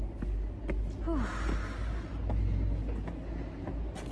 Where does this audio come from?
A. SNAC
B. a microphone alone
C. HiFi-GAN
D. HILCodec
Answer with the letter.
B